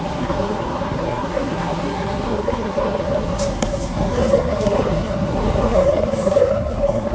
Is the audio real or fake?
fake